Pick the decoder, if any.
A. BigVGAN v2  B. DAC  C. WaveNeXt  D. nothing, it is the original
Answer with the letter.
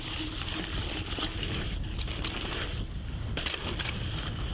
D